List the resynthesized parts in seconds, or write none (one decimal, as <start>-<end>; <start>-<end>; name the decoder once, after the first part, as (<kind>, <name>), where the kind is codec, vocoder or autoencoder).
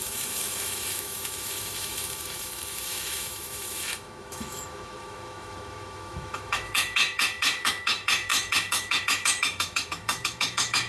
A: 0.0-10.9 (autoencoder, DAC-VAE)